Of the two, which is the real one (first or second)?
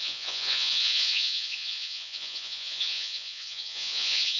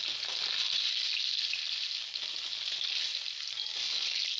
second